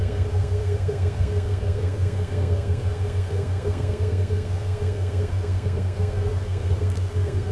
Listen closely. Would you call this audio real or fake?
fake